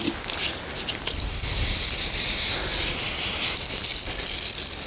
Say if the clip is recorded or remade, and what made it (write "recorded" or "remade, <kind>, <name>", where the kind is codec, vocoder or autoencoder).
recorded